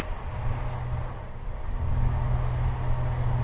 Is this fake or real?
real